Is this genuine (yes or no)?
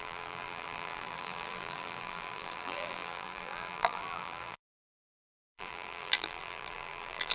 no